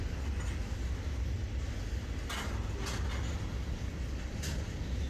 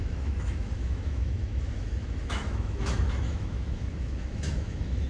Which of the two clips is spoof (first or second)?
second